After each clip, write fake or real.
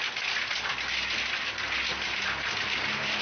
real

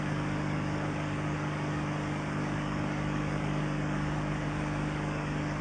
fake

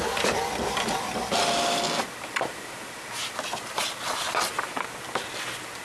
real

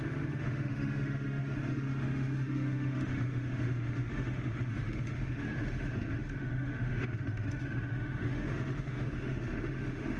fake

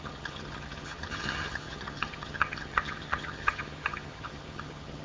fake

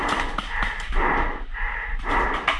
real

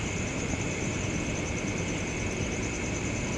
real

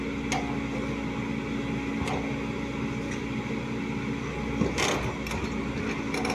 real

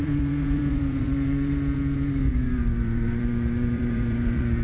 fake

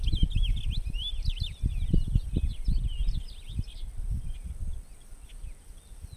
real